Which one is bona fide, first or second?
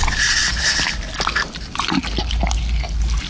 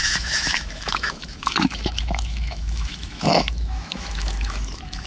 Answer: first